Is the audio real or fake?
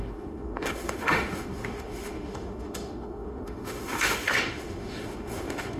fake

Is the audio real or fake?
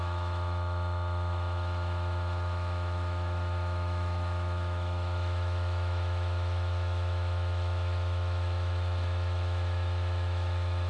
fake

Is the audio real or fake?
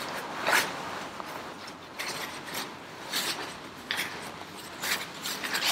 real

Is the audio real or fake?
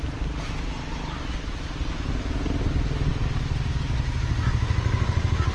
real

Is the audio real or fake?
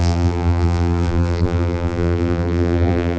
fake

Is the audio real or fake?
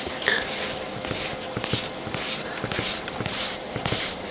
real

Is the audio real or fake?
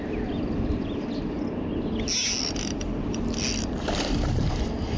real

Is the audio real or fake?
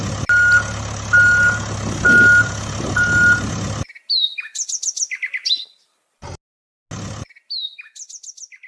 real